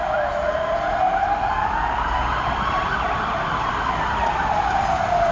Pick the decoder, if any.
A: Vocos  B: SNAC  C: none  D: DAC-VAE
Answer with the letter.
C